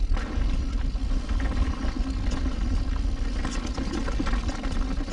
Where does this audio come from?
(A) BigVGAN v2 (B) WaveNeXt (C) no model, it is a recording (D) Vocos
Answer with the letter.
C